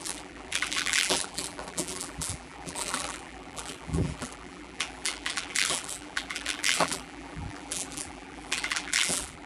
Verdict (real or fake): fake